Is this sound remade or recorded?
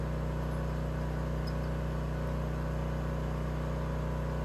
recorded